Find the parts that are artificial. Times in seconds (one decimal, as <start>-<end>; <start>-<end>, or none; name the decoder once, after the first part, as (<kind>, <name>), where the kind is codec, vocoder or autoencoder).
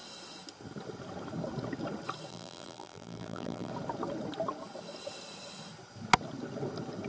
2.3-3.7 (vocoder, BigVGAN v2)